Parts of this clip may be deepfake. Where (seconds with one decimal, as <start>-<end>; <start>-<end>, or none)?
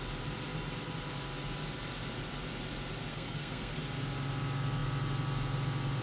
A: 3.1-3.8